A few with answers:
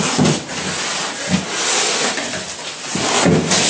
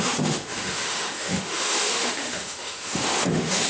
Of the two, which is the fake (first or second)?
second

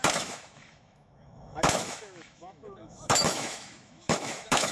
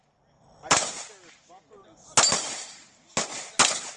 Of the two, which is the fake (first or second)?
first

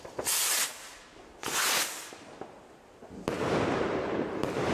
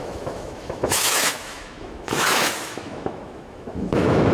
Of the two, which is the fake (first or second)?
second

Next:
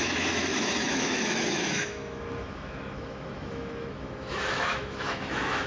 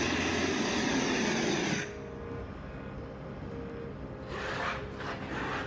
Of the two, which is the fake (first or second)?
first